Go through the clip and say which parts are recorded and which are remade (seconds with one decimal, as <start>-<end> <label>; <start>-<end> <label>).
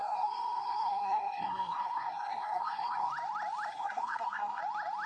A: 0.0-3.1 remade; 3.1-3.7 recorded; 3.7-4.6 remade; 4.6-5.1 recorded